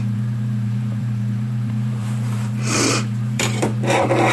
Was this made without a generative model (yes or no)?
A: no